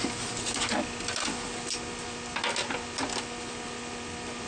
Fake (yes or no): no